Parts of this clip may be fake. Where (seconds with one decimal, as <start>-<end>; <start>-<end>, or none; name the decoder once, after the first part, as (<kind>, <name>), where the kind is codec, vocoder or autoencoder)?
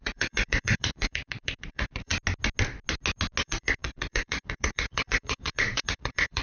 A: 0.0-2.1 (vocoder, Vocos); 3.4-6.4